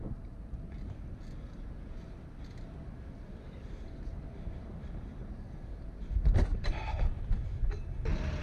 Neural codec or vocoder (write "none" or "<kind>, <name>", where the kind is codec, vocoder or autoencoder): none